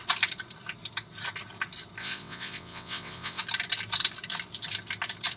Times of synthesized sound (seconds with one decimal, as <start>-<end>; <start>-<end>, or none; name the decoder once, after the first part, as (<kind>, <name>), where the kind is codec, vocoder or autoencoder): 2.0-3.4 (vocoder, WaveNeXt)